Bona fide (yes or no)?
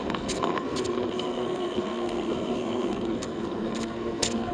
no